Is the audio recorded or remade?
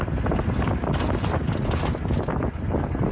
recorded